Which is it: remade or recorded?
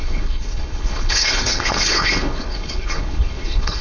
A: remade